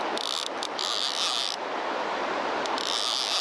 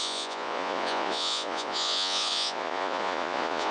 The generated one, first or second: second